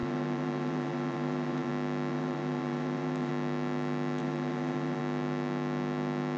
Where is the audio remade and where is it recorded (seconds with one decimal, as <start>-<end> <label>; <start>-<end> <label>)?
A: 0.0-1.7 remade; 1.7-2.1 recorded; 2.1-3.3 remade; 3.3-4.2 recorded; 4.2-5.0 remade; 5.0-6.4 recorded